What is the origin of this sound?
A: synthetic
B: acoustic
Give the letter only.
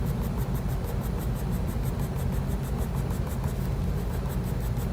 B